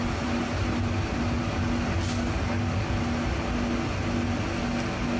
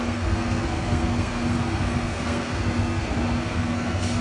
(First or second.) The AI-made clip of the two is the second